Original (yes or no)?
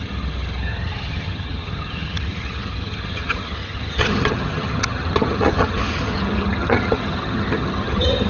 no